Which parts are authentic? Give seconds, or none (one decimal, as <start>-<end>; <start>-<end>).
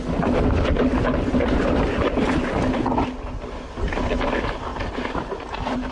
0.0-0.9; 2.1-4.7